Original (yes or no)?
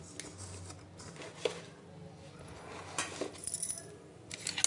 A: yes